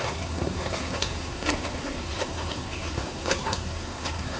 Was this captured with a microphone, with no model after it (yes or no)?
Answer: no